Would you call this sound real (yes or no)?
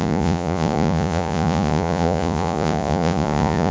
no